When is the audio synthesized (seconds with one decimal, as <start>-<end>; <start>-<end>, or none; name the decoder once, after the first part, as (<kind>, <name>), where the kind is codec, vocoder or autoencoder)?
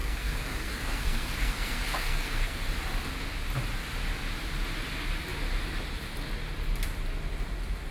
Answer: 0.0-2.7 (codec, SNAC)